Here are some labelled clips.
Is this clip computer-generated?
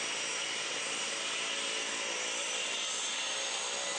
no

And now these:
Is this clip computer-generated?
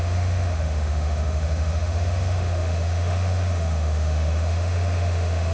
yes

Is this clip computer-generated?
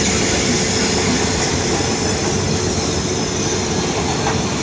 no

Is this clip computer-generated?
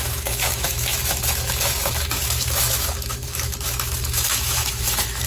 yes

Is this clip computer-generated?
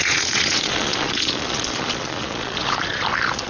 yes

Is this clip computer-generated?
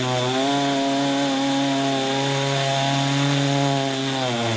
no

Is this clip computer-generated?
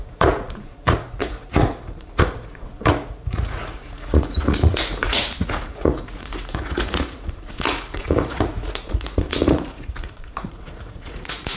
yes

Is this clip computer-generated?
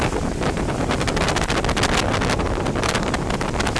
no